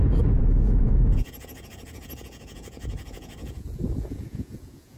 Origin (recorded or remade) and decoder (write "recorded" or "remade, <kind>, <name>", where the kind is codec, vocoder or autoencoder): remade, vocoder, Vocos